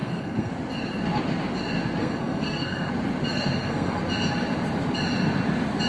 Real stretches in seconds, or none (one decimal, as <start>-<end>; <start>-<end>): 0.5-2.0; 2.9-3.3; 4.0-5.9